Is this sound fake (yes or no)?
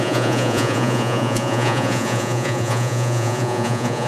yes